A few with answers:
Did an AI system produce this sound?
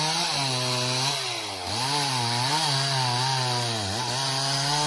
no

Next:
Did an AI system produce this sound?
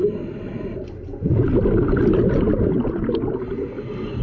no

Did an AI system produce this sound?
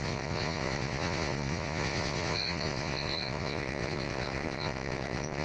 yes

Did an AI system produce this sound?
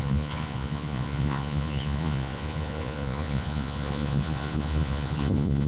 yes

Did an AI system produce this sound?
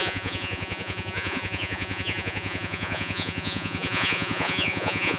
yes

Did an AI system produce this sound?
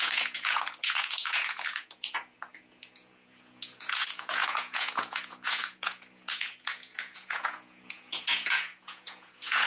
yes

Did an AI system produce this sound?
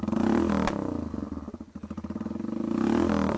no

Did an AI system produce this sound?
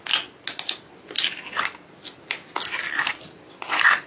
no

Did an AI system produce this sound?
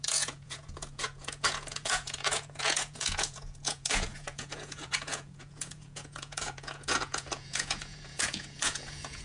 yes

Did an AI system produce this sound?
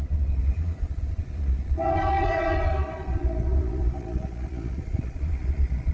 yes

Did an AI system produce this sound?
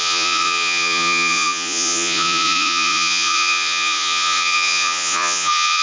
yes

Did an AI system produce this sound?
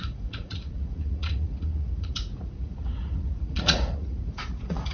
yes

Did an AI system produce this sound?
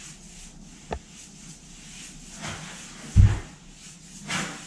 no